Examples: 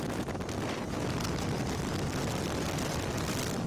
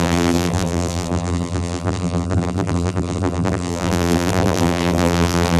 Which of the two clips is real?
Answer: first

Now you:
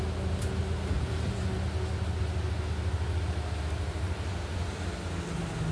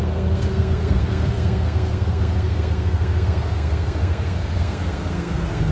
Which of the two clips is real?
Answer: first